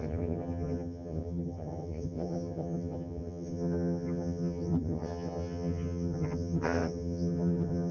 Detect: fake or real fake